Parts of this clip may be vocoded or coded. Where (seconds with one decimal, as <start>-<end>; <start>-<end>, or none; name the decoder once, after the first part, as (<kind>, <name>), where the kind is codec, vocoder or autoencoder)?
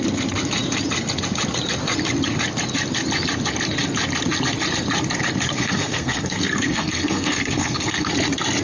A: 5.5-8.1 (codec, SNAC)